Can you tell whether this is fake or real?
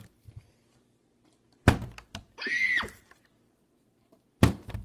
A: fake